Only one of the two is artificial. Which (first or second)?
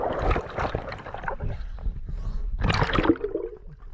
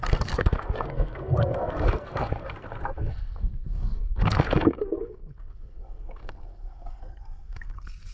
second